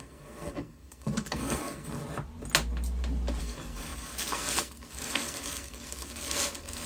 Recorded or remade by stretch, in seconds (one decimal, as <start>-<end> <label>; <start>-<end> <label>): 0.0-2.0 remade; 2.0-3.4 recorded; 3.4-6.9 remade

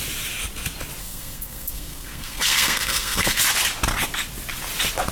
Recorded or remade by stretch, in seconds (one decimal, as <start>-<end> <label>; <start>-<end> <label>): 0.0-1.0 recorded; 1.0-3.4 remade; 3.4-5.1 recorded